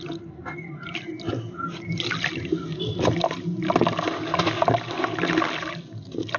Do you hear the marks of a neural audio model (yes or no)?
no